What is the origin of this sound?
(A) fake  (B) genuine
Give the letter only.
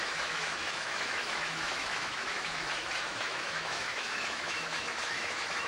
A